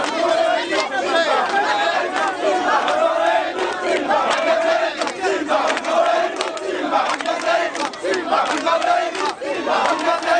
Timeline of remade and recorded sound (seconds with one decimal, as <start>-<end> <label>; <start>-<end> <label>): 0.0-3.5 recorded; 3.5-5.1 remade; 5.1-6.0 recorded; 6.0-7.3 remade; 7.3-10.4 recorded